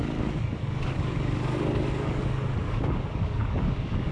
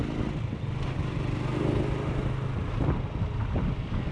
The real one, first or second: second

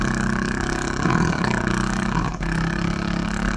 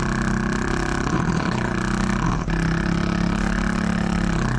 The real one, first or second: second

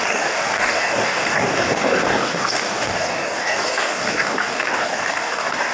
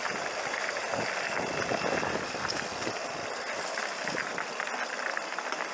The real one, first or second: second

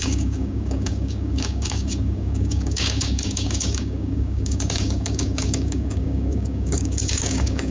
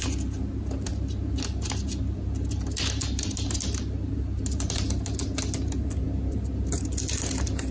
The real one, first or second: second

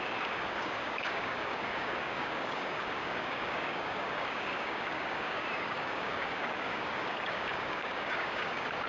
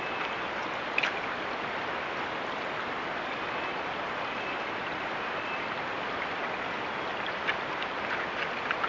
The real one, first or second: second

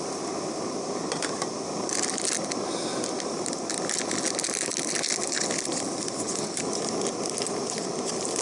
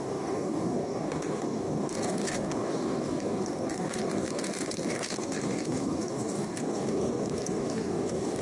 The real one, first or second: first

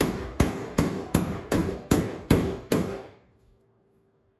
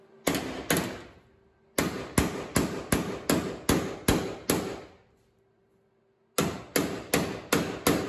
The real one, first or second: second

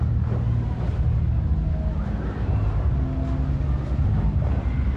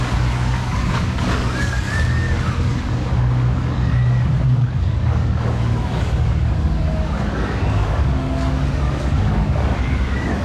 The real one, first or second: first